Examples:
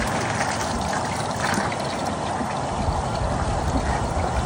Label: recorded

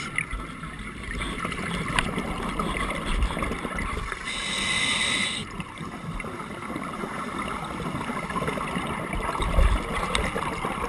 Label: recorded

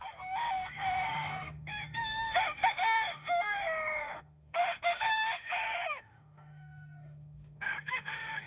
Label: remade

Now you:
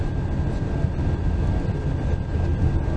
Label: recorded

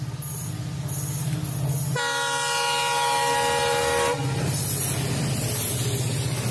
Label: recorded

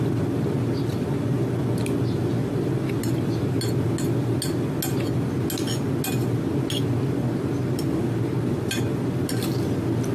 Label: recorded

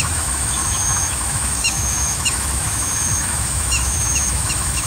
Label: remade